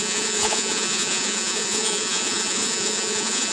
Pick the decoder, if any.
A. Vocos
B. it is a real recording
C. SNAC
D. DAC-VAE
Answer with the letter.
A